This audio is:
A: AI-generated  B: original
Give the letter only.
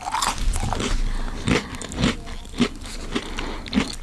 B